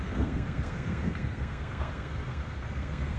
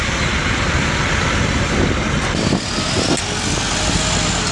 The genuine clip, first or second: second